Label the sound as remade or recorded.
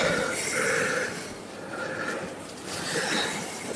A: recorded